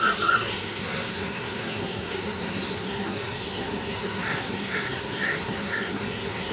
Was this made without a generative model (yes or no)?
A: no